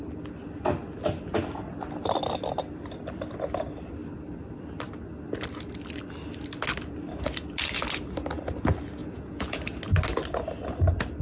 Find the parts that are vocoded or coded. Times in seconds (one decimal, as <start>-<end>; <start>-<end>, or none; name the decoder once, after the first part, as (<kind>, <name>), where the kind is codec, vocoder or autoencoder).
9.0-9.6 (vocoder, Vocos)